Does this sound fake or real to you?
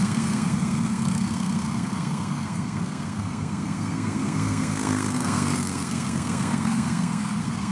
fake